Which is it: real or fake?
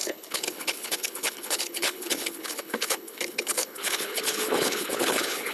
fake